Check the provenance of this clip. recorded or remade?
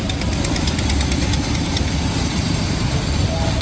recorded